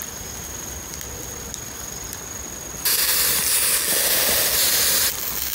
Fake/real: real